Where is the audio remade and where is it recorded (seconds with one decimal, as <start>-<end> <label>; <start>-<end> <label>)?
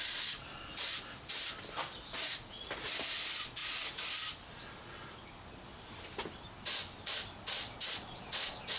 0.0-8.8 recorded